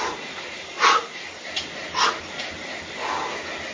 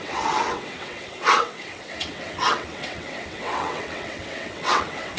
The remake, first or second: second